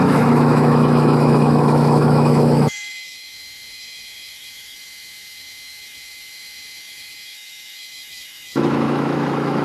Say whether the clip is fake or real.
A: fake